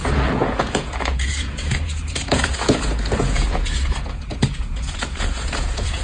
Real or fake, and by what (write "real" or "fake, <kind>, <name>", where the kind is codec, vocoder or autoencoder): fake, vocoder, Vocos